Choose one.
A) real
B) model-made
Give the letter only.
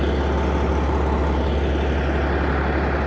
A